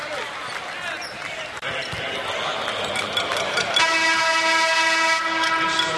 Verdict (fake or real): real